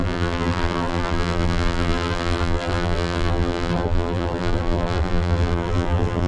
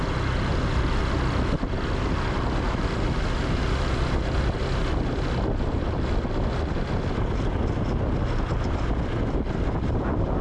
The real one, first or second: second